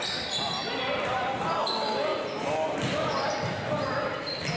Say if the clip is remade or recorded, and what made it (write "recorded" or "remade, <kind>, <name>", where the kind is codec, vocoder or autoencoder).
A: recorded